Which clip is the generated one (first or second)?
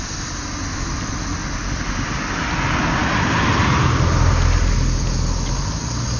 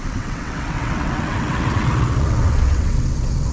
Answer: second